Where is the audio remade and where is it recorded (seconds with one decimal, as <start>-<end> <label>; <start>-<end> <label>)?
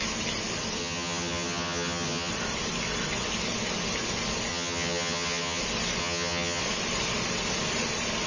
0.0-0.8 recorded; 0.8-2.3 remade; 2.3-4.5 recorded; 4.5-5.6 remade; 5.6-6.0 recorded; 6.0-6.6 remade; 6.6-8.3 recorded